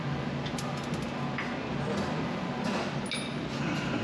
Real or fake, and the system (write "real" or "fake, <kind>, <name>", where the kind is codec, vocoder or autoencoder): real